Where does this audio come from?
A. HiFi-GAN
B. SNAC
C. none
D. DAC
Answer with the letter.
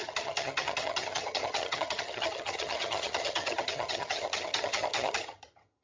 A